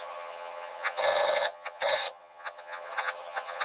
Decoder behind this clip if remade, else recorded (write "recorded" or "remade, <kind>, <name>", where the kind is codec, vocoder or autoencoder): remade, vocoder, HiFi-GAN